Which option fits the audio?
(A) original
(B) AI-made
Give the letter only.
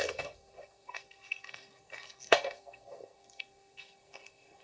B